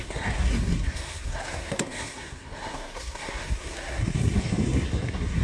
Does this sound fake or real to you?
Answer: fake